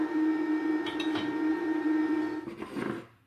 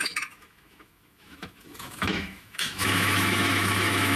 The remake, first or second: second